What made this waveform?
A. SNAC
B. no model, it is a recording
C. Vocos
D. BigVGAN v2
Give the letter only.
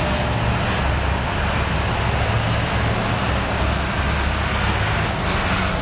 B